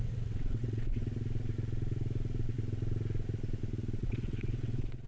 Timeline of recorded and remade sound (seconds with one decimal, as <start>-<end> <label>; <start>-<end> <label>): 0.0-1.0 remade; 1.0-4.0 recorded; 4.0-5.1 remade